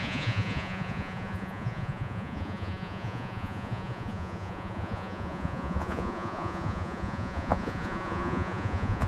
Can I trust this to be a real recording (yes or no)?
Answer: no